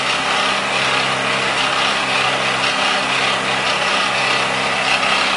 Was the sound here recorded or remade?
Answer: recorded